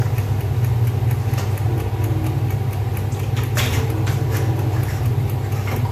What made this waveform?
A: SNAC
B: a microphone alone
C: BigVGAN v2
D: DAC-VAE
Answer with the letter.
B